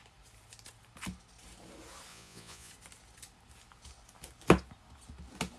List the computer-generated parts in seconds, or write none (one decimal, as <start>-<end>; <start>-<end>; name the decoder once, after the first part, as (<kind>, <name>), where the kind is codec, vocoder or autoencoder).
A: 2.1-2.7 (vocoder, Vocos)